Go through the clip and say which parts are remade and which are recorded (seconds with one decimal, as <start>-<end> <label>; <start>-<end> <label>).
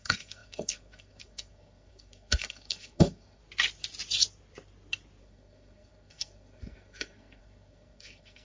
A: 0.0-3.4 remade; 3.4-5.2 recorded; 5.2-8.4 remade